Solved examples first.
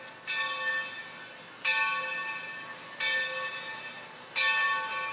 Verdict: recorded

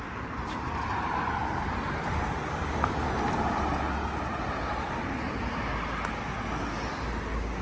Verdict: recorded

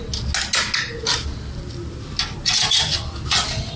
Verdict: recorded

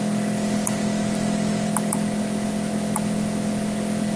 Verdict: recorded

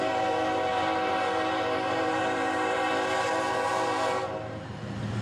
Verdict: remade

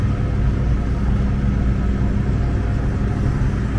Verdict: recorded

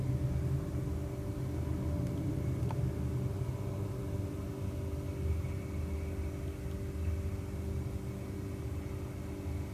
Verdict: recorded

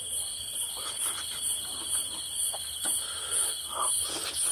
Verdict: recorded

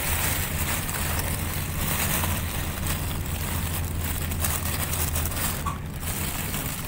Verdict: remade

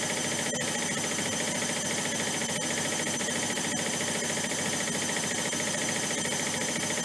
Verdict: recorded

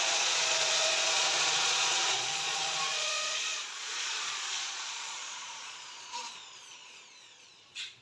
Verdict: remade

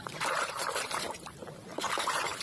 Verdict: remade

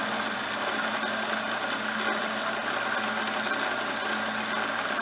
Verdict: recorded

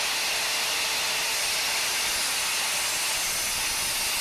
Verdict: recorded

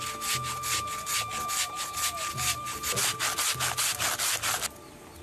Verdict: recorded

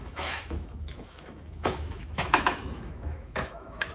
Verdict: remade